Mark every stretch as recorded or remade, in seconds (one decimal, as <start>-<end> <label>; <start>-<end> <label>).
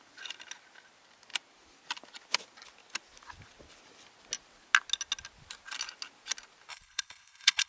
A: 0.0-6.7 recorded; 6.7-7.7 remade